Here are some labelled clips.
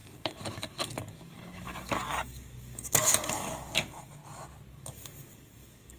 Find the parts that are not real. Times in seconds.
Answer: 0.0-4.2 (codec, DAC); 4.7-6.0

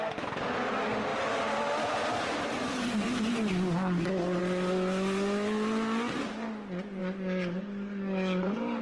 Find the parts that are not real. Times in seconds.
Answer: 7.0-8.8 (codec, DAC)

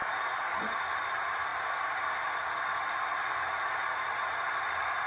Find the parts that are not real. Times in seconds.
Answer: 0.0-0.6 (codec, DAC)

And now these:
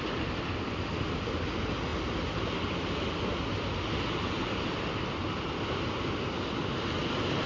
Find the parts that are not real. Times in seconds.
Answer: none

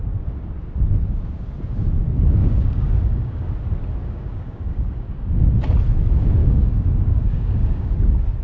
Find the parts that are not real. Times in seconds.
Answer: 2.4-3.5 (codec, DAC); 4.0-5.4; 6.4-7.9